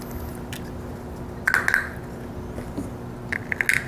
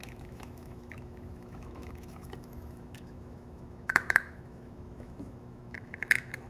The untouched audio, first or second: first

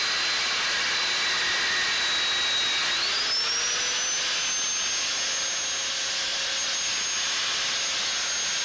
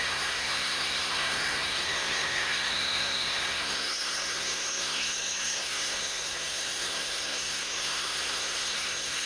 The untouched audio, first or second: first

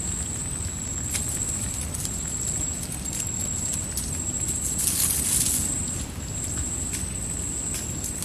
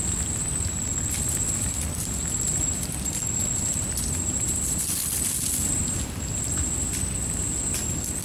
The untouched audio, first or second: first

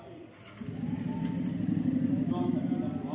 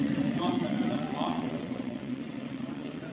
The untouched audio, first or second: first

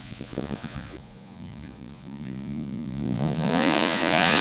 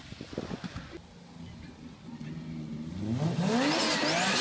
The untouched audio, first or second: second